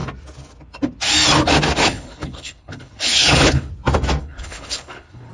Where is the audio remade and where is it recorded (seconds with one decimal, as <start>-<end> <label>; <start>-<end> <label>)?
0.0-1.8 recorded; 1.8-3.7 remade; 3.7-4.2 recorded; 4.2-5.3 remade

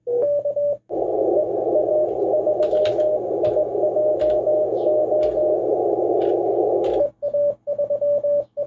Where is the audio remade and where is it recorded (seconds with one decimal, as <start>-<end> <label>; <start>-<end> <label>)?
0.0-8.7 recorded